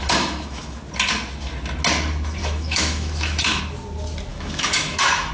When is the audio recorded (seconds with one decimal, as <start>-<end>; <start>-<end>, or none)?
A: 0.8-2.4; 3.6-4.3